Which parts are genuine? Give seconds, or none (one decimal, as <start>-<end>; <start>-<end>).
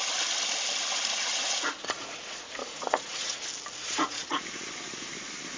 0.0-1.3; 3.4-3.8; 4.7-5.6